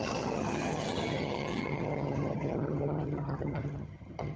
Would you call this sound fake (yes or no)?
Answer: yes